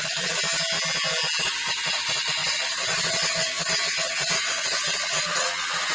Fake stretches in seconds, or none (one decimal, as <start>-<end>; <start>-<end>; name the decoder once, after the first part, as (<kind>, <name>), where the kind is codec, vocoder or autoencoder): 0.0-0.4 (vocoder, WaveNeXt); 1.4-5.9